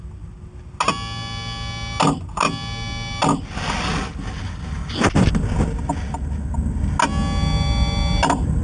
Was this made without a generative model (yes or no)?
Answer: yes